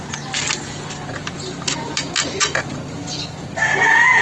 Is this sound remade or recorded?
recorded